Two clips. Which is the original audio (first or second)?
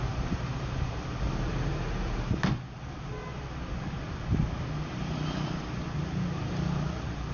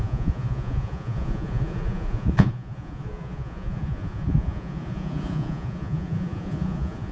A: first